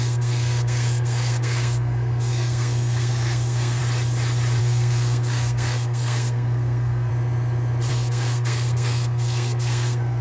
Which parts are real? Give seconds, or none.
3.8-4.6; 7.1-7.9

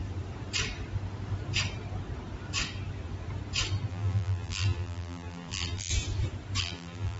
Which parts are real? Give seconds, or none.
0.0-3.9; 5.9-6.6

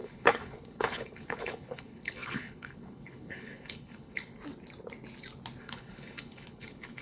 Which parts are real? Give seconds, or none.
4.3-5.6

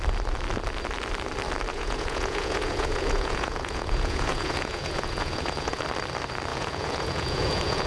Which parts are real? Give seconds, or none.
0.0-1.7; 5.8-6.5

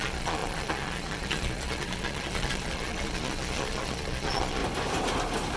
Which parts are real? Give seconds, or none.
4.6-5.6

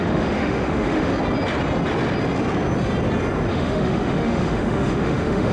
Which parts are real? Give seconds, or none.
1.1-3.5

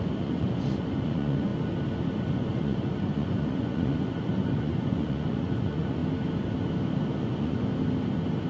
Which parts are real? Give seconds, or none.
1.5-2.3; 6.0-7.1; 7.7-8.5